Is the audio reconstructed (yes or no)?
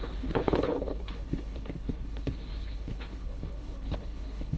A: yes